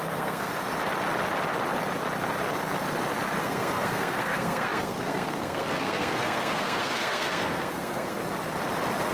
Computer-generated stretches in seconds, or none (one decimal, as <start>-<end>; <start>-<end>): 0.0-0.5; 3.4-8.2